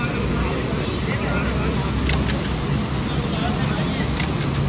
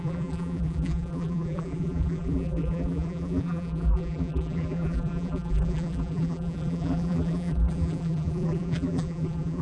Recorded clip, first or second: first